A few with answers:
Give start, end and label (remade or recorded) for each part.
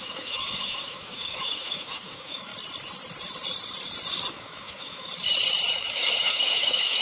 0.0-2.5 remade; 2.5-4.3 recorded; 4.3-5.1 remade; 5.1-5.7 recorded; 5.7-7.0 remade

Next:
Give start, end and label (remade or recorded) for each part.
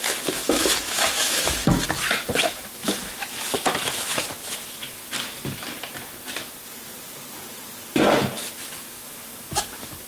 0.0-1.6 remade; 1.6-2.4 recorded; 2.4-5.0 remade; 5.0-8.5 recorded; 8.5-10.1 remade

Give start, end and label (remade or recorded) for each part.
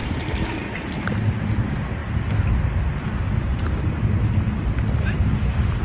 0.0-5.8 recorded